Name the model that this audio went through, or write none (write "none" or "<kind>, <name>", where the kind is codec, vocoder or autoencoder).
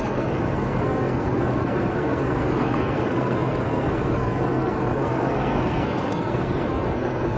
codec, SNAC